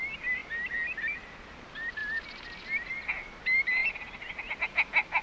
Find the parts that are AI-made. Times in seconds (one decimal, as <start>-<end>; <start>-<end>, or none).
3.8-4.6